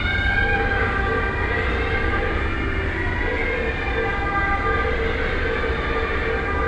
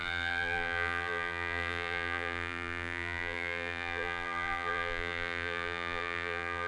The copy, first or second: second